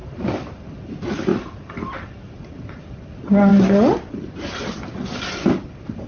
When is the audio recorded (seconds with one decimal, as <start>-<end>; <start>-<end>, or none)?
0.0-6.1